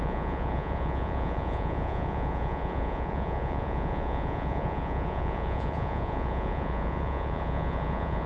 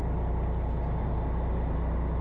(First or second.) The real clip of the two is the second